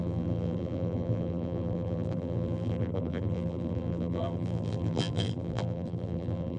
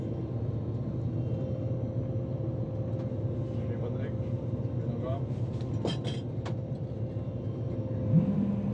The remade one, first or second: first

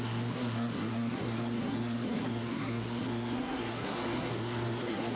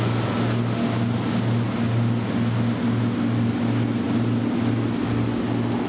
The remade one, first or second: first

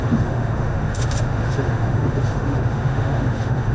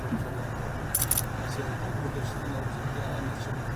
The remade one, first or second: first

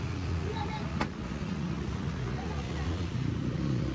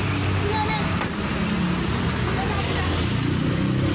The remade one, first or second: first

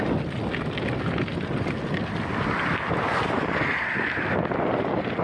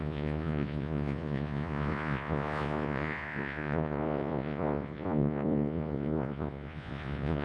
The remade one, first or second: second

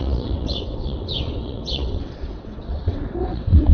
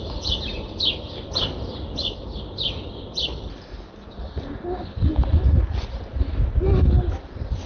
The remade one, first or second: first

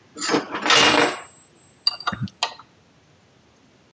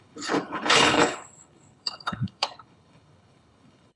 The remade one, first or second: second